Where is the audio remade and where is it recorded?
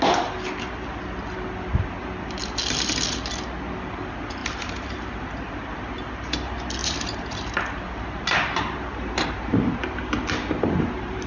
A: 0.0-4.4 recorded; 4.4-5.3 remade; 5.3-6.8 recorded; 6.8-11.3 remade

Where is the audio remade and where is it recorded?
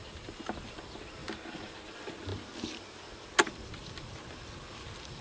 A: 0.0-5.2 recorded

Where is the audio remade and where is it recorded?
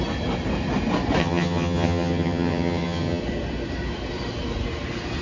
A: 0.0-1.2 recorded; 1.2-3.2 remade; 3.2-5.2 recorded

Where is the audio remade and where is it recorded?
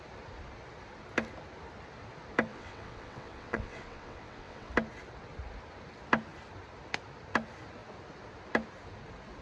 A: 0.0-2.5 recorded; 2.5-4.7 remade; 4.7-9.4 recorded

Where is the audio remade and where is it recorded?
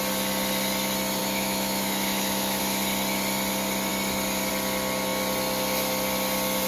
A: 0.0-1.2 recorded; 1.2-2.6 remade; 2.6-6.7 recorded